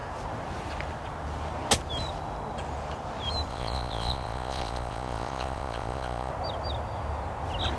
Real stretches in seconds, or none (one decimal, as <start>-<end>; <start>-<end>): 0.0-3.5; 6.3-7.8